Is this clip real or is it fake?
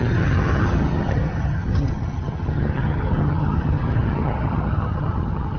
fake